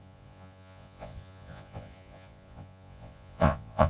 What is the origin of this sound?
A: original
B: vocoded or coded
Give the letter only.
B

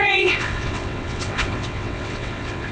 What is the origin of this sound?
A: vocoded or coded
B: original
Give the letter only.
A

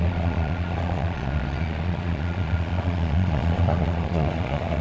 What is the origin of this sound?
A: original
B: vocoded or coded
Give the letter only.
B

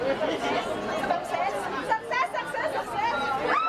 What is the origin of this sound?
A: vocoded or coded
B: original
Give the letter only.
B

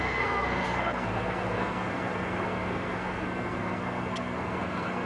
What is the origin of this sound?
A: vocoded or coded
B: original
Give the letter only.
A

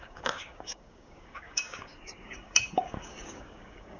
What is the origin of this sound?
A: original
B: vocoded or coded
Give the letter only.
B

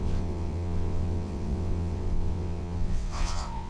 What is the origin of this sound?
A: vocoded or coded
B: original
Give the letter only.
A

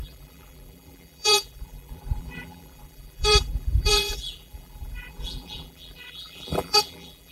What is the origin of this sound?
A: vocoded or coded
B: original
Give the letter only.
A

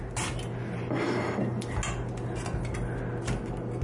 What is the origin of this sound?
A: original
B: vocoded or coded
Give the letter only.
A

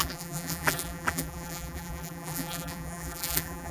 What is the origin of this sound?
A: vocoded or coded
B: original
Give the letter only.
A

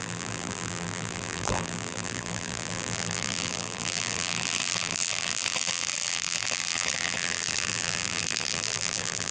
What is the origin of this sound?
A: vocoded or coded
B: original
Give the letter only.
A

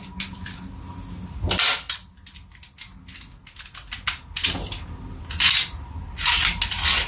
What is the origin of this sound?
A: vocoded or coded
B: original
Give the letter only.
B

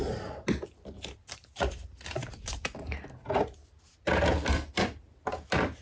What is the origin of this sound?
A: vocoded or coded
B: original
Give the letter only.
B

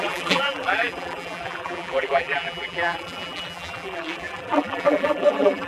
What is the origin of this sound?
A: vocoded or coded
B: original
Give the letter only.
A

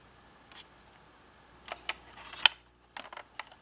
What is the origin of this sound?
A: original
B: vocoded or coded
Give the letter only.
A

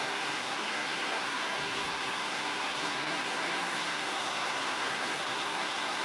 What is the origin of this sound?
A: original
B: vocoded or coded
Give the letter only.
B